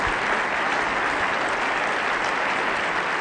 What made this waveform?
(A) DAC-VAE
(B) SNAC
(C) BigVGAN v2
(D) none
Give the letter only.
D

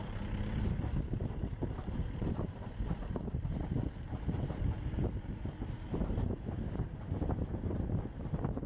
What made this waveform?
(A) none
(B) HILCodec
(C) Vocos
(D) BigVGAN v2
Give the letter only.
D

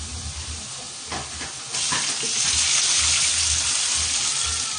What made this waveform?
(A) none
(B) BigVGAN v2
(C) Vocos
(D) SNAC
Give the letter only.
A